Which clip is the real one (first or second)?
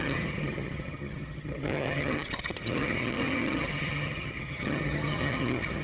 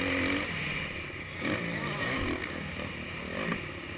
second